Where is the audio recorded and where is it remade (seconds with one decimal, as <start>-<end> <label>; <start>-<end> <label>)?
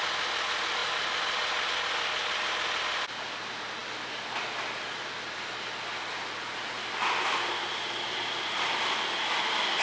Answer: 0.0-9.8 recorded